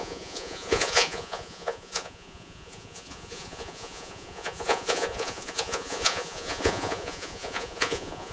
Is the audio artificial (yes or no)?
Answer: yes